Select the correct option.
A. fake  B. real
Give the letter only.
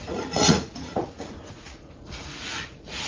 A